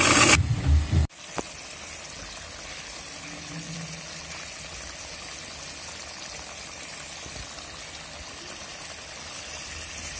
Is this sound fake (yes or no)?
no